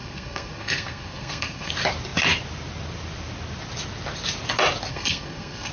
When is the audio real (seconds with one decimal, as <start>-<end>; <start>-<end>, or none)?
1.7-4.9